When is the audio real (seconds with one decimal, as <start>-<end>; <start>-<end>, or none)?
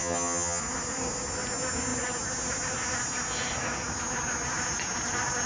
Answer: 0.6-5.5